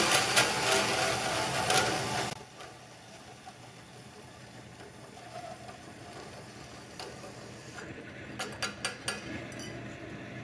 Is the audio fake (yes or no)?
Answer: no